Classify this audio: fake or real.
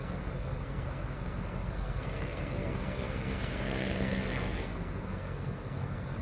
fake